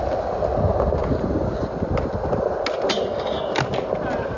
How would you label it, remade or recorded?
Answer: recorded